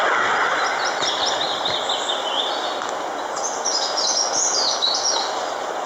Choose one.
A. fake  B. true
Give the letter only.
B